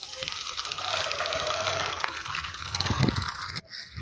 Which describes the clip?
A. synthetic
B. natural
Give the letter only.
A